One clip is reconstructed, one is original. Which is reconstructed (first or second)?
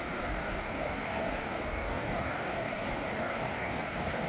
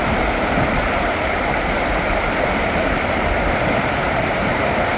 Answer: first